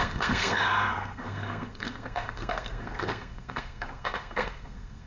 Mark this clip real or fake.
fake